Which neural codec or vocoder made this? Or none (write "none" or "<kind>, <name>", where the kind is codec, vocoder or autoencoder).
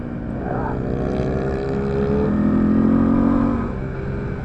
none